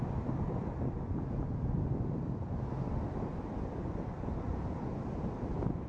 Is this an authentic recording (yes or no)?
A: yes